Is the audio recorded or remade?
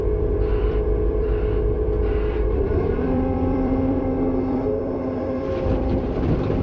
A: remade